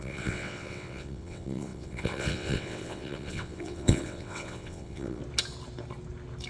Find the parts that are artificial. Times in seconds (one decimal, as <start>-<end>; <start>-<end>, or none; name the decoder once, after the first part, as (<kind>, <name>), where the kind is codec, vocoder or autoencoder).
0.0-5.2 (vocoder, WaveNeXt)